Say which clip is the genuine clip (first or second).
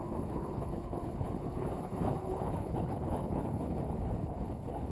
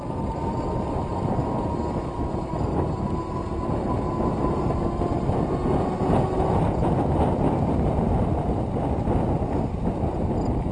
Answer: second